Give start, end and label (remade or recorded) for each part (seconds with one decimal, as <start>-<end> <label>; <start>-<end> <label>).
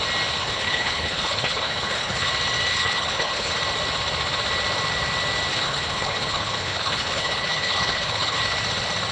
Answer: 0.0-0.4 recorded; 0.4-2.3 remade; 2.3-2.7 recorded; 2.7-3.5 remade; 3.5-5.5 recorded; 5.5-8.4 remade; 8.4-9.1 recorded